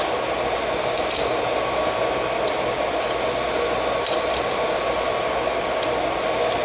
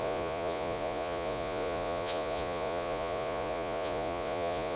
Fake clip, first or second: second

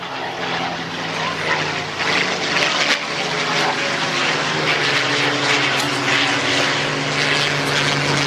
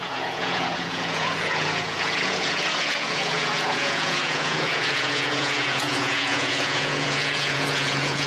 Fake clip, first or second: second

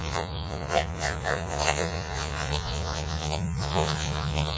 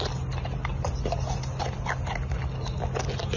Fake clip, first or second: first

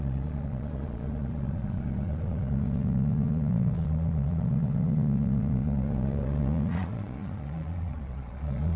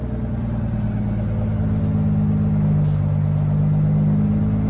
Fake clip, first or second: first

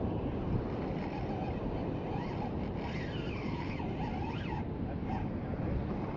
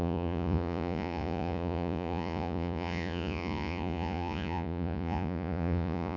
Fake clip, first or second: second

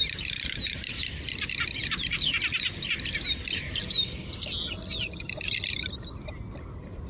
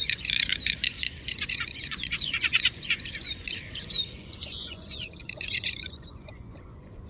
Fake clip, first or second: second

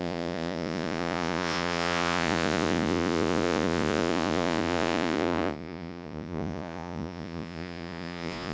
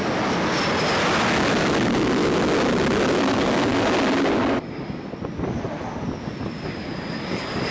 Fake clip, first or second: first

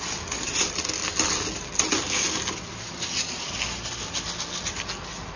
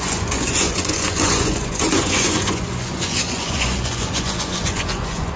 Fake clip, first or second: second